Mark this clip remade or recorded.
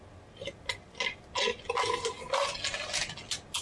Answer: recorded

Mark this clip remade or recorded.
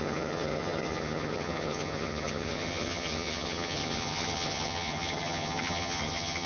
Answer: remade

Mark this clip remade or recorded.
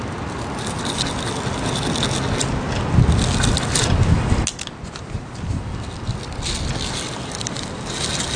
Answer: recorded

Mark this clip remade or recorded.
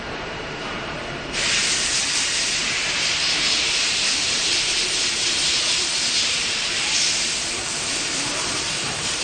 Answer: remade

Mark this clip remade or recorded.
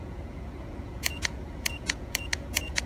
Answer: remade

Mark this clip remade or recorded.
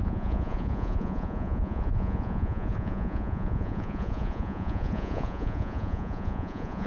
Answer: remade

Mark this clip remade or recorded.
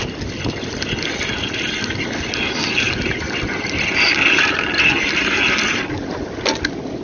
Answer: recorded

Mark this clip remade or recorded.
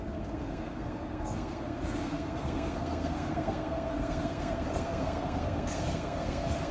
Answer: remade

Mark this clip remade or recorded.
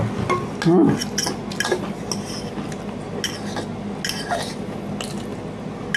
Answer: recorded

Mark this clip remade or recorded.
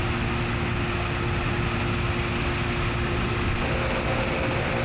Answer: recorded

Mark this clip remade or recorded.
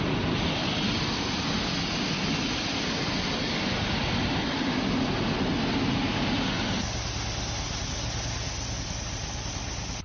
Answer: recorded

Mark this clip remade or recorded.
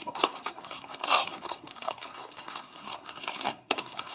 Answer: remade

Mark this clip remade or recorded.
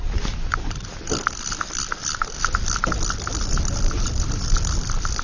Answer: recorded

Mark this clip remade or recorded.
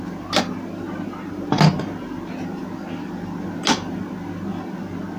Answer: recorded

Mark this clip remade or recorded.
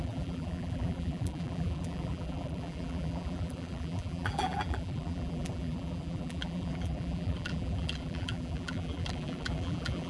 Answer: remade